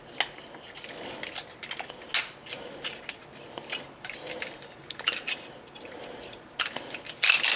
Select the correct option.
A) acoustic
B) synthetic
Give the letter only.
A